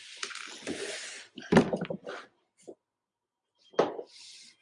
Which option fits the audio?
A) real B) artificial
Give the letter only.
A